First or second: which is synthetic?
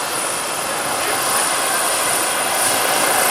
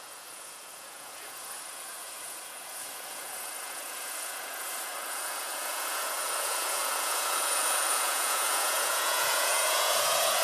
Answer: second